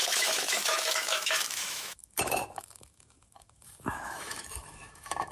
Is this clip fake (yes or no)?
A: yes